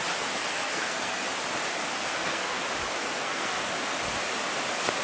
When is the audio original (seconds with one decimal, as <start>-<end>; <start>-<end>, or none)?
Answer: 0.0-0.5; 1.2-1.9; 2.6-3.0; 3.7-5.0